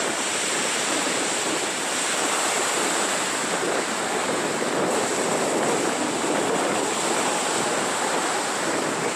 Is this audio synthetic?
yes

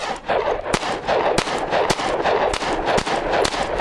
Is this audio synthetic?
no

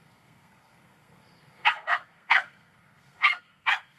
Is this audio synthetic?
yes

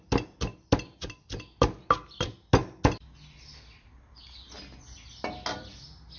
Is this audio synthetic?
no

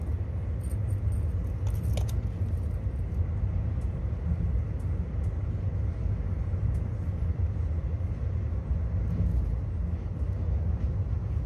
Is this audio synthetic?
no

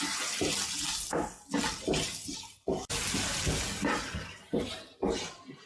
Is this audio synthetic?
no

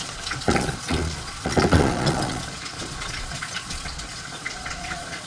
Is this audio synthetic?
yes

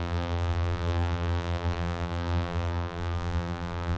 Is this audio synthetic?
yes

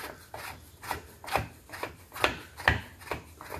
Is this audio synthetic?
no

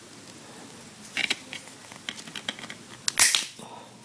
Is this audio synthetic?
no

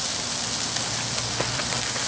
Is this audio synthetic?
no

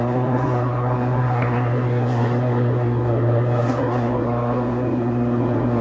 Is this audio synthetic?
yes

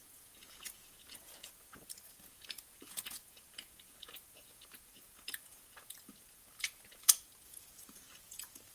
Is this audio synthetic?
yes